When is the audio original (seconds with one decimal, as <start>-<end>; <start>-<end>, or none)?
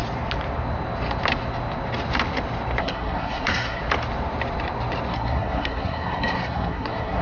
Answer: 0.0-2.8; 3.8-5.1